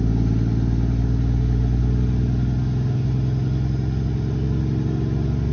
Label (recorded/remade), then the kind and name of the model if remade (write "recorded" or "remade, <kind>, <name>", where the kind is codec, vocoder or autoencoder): recorded